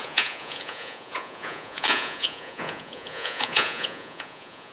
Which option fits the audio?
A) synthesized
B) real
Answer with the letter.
A